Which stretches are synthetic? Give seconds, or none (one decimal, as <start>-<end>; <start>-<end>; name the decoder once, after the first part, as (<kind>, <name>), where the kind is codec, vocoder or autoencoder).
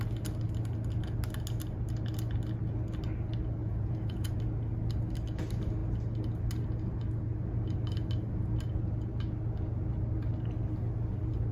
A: 3.6-4.3 (vocoder, Vocos)